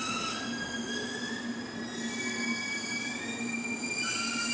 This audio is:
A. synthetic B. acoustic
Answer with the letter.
B